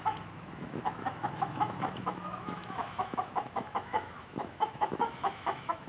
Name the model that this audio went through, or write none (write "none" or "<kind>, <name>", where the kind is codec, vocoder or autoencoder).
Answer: autoencoder, DAC-VAE